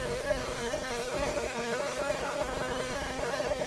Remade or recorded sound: remade